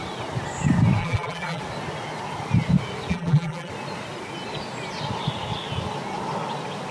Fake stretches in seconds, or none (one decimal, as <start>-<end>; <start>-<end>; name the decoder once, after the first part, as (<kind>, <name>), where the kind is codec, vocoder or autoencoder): 1.0-1.6 (vocoder, BigVGAN v2); 3.1-3.7